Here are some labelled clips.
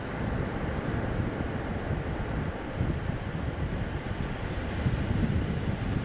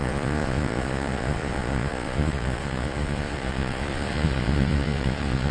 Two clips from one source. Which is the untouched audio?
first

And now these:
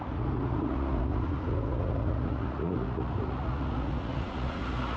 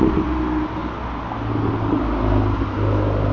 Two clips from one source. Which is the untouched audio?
second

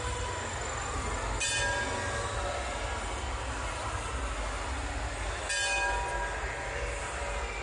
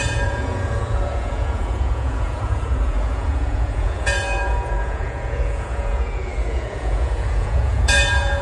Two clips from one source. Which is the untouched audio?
first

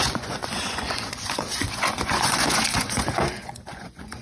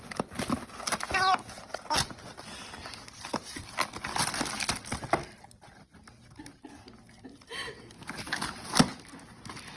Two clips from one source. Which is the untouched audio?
second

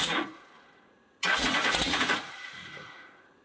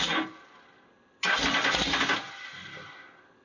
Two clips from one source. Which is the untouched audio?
second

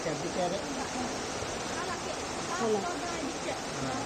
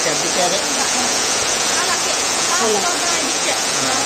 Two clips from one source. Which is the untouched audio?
first